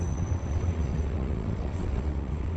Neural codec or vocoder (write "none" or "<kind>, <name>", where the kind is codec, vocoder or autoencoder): vocoder, WaveNeXt